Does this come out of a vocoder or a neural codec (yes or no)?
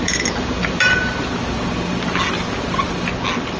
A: no